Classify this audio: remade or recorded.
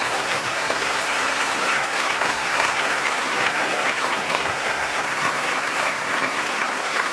remade